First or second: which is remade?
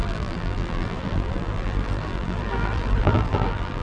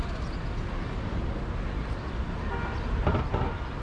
first